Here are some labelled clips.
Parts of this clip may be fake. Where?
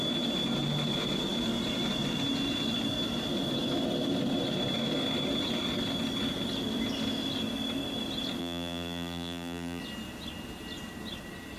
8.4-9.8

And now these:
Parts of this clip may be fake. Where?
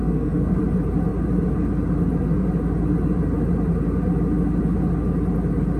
0.0-0.6